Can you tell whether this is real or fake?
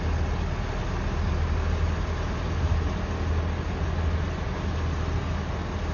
real